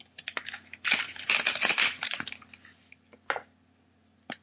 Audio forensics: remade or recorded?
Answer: recorded